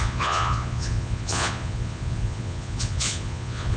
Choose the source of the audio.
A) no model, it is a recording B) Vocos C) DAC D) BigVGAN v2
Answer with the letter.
B